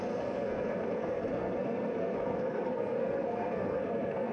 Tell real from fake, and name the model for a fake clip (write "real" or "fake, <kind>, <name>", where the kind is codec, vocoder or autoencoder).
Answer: fake, codec, SNAC